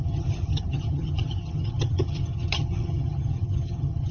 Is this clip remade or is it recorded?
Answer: remade